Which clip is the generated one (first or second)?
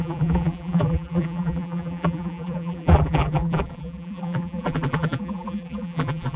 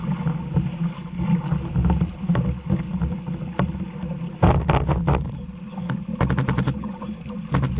first